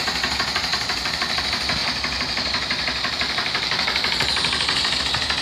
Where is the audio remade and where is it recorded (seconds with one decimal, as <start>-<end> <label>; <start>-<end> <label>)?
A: 0.0-0.7 recorded; 0.7-1.4 remade; 1.4-1.8 recorded; 1.8-5.0 remade; 5.0-5.4 recorded